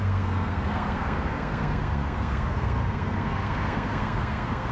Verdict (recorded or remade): remade